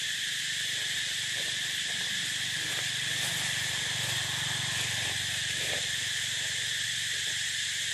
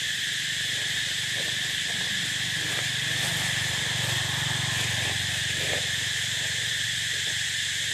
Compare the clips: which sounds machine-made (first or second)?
first